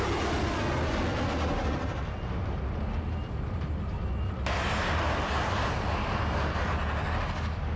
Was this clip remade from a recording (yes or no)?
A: no